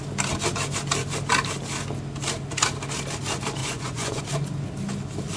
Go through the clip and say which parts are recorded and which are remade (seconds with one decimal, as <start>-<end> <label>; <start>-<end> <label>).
0.0-3.6 recorded; 3.6-4.2 remade; 4.2-5.4 recorded